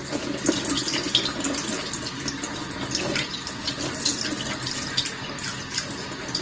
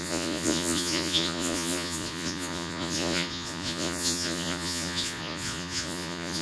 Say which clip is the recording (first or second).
first